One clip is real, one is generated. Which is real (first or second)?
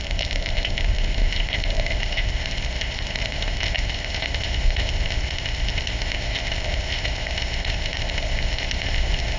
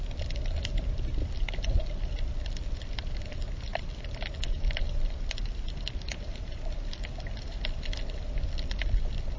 second